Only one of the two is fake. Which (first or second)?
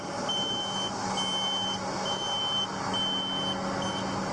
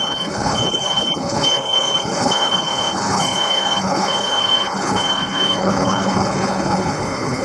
second